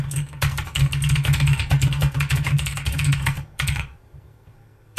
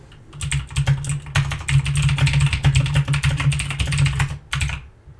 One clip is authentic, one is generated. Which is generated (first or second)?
first